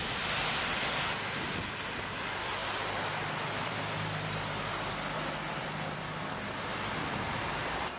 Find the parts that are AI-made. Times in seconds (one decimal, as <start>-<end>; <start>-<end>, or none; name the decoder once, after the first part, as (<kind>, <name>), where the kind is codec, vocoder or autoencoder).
none